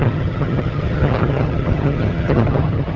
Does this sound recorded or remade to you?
remade